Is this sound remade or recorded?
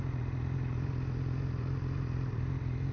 recorded